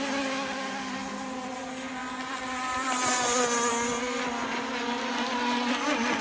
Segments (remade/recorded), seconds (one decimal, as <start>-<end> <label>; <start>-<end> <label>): 0.0-6.2 recorded